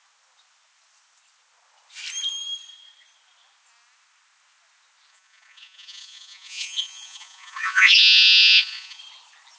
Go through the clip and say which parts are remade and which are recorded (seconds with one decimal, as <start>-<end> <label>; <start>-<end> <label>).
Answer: 0.0-5.1 recorded; 5.1-9.0 remade; 9.0-9.6 recorded